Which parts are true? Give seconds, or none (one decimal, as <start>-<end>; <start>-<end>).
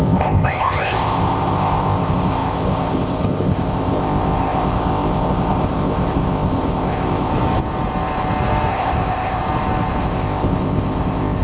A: 7.3-8.7; 9.4-10.0